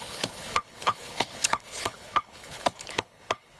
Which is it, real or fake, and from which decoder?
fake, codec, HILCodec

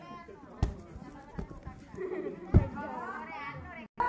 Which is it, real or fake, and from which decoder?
real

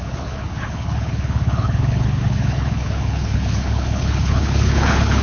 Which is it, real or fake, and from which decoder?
fake, codec, HILCodec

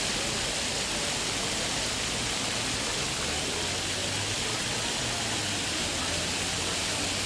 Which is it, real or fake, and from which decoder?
real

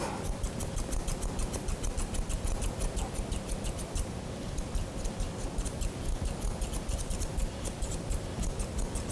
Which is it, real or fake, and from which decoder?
real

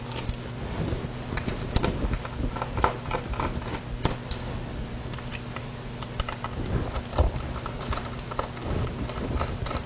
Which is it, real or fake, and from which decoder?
real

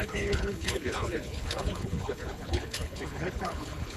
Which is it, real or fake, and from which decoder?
fake, codec, HILCodec